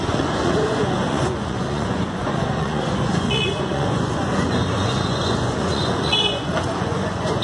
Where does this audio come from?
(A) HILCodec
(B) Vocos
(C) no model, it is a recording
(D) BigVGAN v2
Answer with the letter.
B